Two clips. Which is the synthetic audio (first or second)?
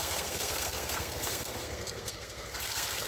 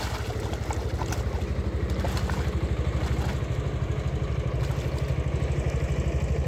first